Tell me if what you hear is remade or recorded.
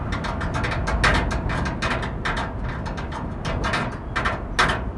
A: recorded